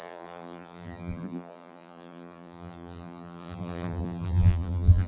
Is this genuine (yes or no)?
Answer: no